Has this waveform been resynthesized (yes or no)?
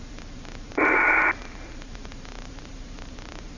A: yes